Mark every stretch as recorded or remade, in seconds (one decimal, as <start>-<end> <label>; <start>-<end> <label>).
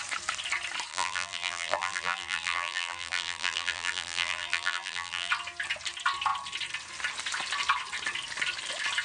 0.0-0.9 recorded; 0.9-5.3 remade; 5.3-9.0 recorded